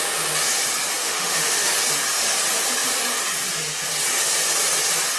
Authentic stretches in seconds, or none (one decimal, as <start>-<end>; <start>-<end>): 0.0-1.0; 1.7-5.2